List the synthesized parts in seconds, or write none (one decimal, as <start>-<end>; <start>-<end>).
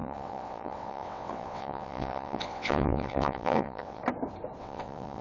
0.0-4.0; 4.6-5.2